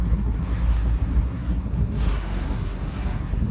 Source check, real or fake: fake